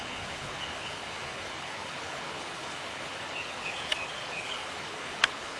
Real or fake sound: fake